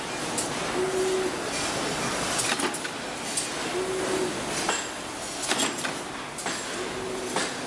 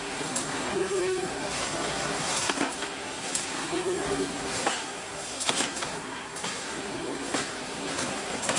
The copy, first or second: second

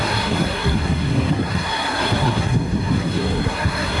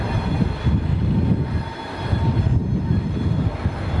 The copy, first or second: first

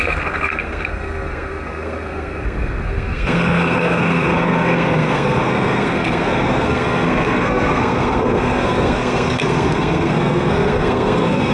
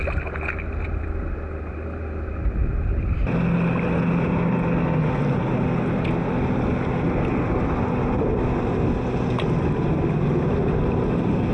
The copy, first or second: first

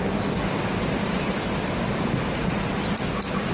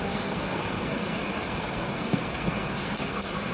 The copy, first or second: second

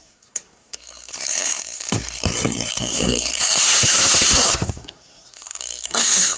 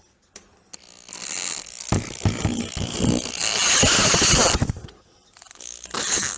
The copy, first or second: first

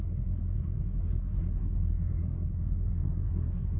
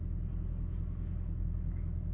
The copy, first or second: first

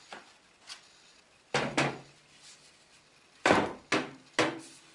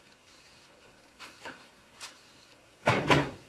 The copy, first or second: second